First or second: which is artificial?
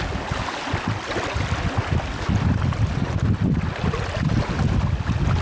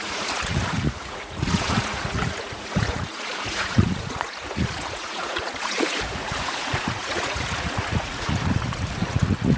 second